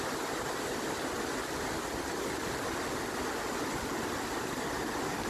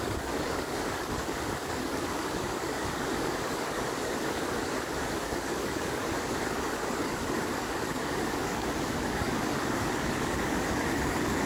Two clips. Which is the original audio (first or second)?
first